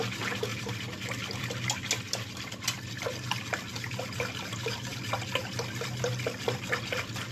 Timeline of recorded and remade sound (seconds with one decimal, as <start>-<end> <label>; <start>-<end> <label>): 0.0-7.3 recorded